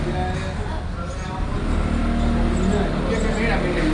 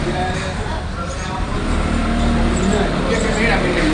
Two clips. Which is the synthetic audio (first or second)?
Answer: second